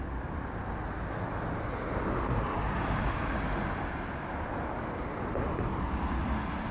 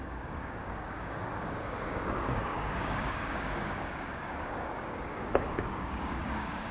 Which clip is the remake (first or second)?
second